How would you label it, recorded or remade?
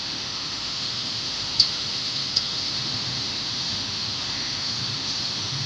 remade